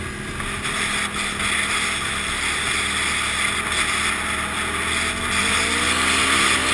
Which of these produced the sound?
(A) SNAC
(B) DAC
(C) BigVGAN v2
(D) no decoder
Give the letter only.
D